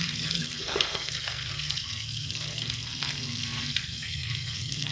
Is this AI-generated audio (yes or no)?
yes